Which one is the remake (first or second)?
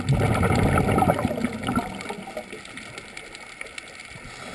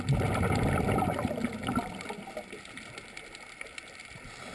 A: second